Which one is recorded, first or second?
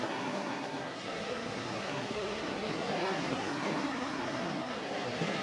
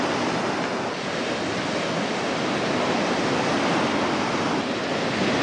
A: second